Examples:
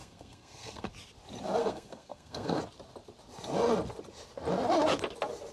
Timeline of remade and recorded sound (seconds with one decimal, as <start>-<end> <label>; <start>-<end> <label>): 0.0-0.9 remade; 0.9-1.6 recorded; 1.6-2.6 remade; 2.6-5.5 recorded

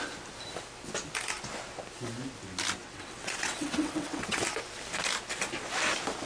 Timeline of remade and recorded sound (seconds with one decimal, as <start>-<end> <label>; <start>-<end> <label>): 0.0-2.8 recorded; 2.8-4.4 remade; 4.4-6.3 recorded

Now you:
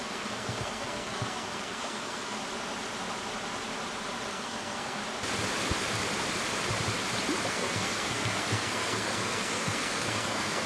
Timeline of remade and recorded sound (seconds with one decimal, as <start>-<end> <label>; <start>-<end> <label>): 0.0-2.4 remade; 2.4-4.3 recorded; 4.3-5.0 remade; 5.0-7.5 recorded; 7.5-10.7 remade

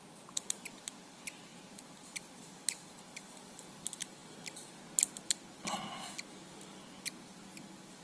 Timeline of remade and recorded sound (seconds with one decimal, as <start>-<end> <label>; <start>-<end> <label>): 0.0-1.5 recorded; 1.5-3.6 remade; 3.6-8.0 recorded